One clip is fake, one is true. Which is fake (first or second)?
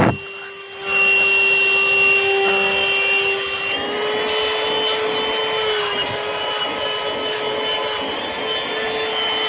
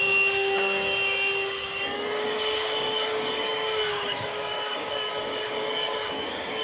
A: second